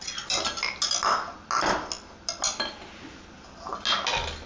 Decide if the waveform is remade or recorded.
recorded